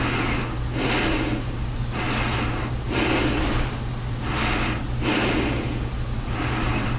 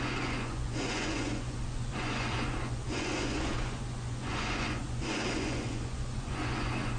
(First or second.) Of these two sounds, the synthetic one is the second